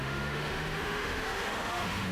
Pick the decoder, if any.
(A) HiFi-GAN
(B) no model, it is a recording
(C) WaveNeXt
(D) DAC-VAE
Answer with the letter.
D